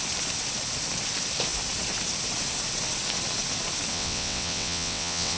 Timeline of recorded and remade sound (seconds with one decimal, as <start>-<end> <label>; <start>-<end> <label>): 0.0-3.9 recorded; 3.9-5.4 remade